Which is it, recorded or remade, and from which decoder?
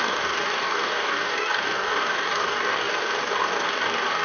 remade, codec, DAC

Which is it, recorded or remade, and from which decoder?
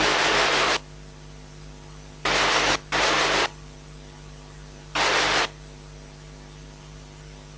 recorded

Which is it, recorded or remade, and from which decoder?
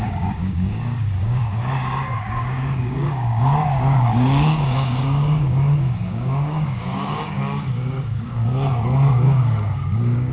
remade, codec, DAC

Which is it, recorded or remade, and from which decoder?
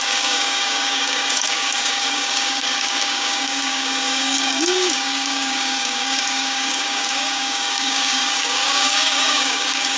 remade, codec, DAC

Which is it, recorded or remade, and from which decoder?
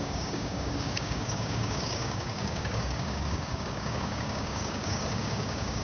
remade, codec, DAC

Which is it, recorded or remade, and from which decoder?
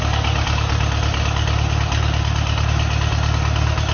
recorded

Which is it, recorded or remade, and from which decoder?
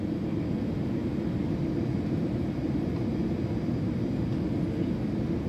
recorded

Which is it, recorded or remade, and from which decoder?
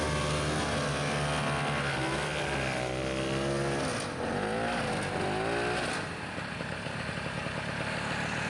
recorded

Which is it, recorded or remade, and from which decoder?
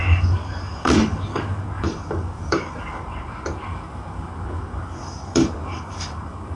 remade, codec, DAC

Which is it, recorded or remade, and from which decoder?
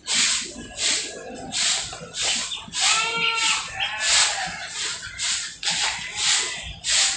recorded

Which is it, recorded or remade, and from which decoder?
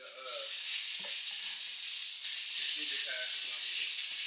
recorded